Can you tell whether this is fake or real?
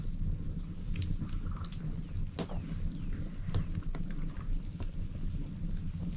real